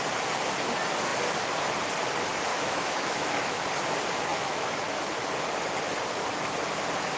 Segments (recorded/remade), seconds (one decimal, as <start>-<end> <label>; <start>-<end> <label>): 0.0-2.5 recorded; 2.5-3.6 remade; 3.6-4.3 recorded; 4.3-4.8 remade; 4.8-7.2 recorded